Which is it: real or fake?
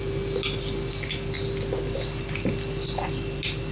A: real